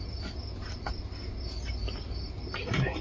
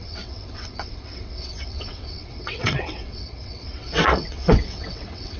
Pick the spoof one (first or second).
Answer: second